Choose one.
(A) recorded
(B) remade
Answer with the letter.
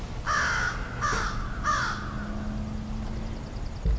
A